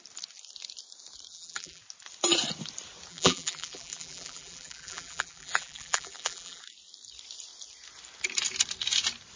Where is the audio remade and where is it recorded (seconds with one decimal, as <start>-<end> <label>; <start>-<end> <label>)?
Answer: 0.0-1.3 recorded; 1.3-1.8 remade; 1.8-3.1 recorded; 3.1-6.6 remade; 6.6-9.4 recorded